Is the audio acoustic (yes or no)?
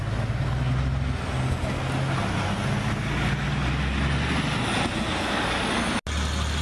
yes